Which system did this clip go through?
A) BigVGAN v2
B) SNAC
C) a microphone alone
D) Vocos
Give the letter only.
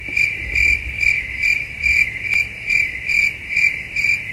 C